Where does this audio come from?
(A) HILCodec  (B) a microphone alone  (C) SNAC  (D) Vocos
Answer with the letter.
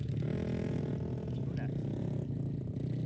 B